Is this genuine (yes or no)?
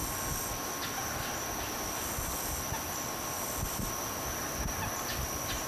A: yes